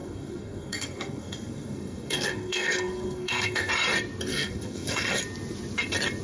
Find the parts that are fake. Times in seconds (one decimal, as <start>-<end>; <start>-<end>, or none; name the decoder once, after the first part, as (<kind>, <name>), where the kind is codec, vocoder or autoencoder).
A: 0.0-3.7 (codec, SNAC); 4.3-5.2